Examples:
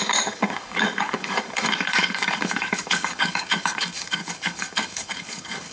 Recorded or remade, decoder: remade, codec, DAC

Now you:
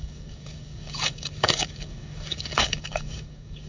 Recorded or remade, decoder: remade, codec, DAC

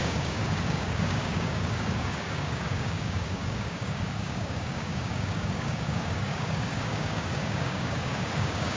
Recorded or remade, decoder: remade, codec, DAC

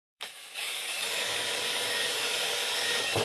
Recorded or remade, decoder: remade, codec, DAC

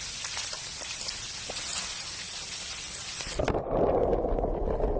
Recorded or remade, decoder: recorded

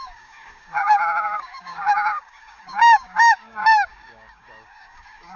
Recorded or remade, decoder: remade, codec, DAC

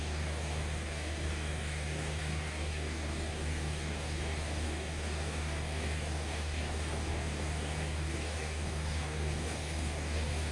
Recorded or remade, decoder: remade, codec, DAC